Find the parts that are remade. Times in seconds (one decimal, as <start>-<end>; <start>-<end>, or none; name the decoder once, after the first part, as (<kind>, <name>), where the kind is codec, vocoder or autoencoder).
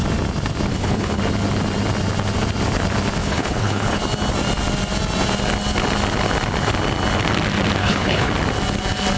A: 0.7-1.2 (codec, HILCodec); 3.2-4.0; 7.8-8.3